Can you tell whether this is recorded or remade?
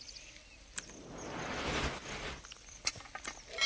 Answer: recorded